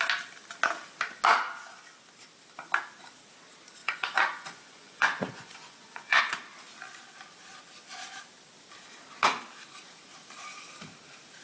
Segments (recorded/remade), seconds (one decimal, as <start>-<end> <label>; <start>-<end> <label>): 0.0-3.8 recorded; 3.8-6.2 remade; 6.2-11.4 recorded